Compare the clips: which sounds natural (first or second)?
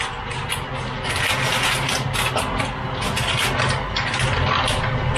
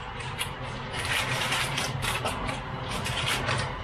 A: first